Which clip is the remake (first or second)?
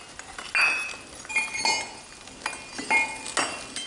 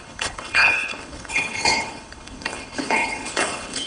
second